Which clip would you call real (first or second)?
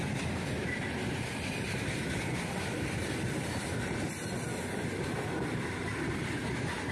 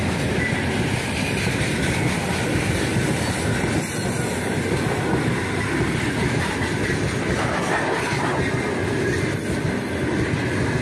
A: second